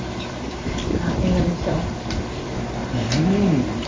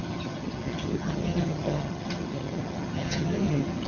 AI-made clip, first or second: second